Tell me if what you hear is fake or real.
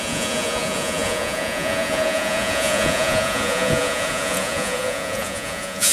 fake